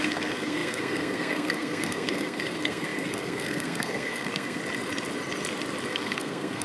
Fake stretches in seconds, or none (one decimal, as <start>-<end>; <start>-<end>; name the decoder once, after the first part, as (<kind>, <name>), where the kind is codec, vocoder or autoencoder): 0.0-4.6 (codec, SNAC); 5.9-6.6